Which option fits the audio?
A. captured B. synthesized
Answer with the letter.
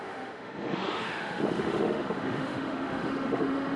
B